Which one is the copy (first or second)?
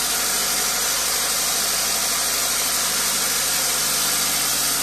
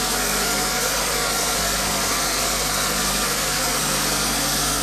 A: second